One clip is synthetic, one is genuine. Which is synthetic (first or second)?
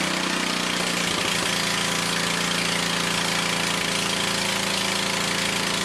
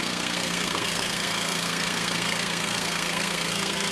second